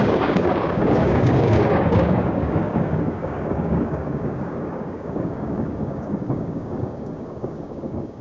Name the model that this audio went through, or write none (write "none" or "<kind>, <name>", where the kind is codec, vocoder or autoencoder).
codec, DAC